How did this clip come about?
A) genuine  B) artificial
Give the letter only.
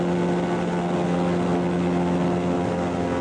A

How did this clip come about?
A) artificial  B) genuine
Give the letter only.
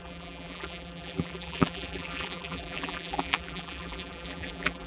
A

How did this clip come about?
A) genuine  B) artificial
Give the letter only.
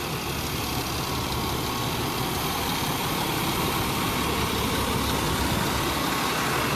A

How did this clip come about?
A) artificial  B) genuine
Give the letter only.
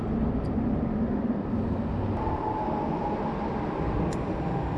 B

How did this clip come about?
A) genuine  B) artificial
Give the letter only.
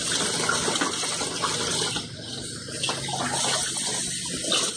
A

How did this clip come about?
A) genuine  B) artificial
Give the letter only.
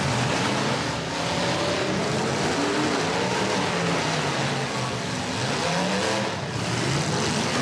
A